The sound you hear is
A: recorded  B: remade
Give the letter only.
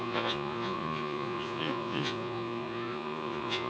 B